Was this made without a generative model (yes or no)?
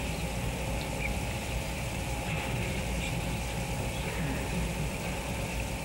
no